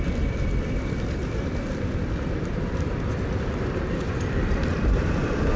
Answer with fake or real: fake